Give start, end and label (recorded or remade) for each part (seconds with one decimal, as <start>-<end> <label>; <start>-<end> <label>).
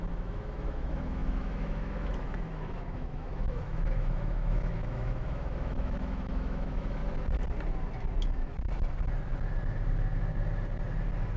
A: 0.0-7.0 remade; 7.0-11.4 recorded